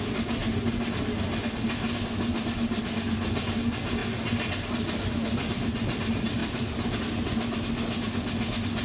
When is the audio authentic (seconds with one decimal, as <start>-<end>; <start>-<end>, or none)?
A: 0.0-6.4; 7.0-8.8